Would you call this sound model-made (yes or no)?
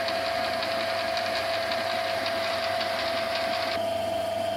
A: no